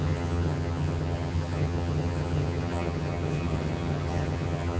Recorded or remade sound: remade